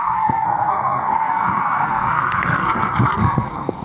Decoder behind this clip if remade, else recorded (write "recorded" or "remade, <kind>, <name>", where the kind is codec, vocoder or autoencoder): remade, codec, SNAC